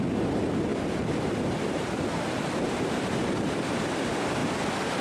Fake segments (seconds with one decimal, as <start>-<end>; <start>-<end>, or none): 0.7-3.7